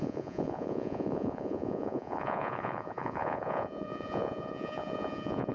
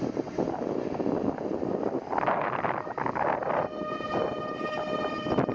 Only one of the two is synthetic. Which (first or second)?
first